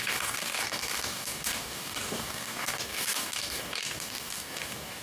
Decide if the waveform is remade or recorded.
remade